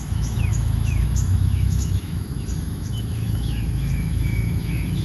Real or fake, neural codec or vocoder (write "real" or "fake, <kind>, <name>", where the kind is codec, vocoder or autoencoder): fake, autoencoder, DAC-VAE